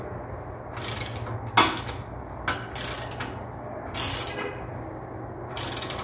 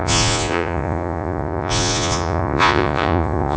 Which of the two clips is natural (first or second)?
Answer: first